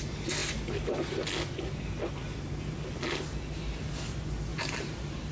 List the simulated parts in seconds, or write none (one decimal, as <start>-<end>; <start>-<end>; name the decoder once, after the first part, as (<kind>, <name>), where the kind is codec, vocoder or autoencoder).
4.5-5.3 (vocoder, BigVGAN v2)